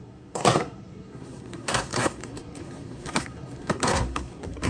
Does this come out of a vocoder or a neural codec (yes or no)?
yes